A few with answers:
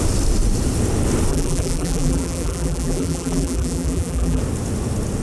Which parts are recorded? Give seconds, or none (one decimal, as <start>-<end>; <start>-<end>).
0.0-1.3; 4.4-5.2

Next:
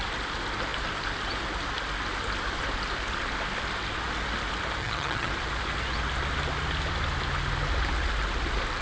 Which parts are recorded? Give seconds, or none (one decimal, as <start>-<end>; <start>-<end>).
0.0-4.8; 5.3-8.8

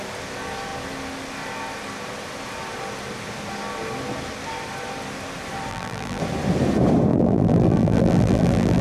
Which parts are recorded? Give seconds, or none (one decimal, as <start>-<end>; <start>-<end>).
0.0-5.7; 6.2-7.1